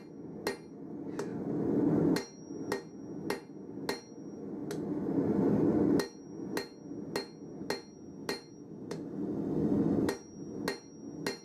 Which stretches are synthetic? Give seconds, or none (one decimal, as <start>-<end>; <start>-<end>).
none